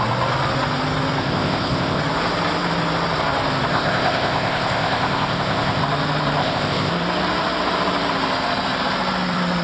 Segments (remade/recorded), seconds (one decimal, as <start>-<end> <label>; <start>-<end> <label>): 0.0-1.2 recorded; 1.2-2.0 remade; 2.0-3.7 recorded; 3.7-5.8 remade; 5.8-6.4 recorded; 6.4-6.9 remade; 6.9-9.6 recorded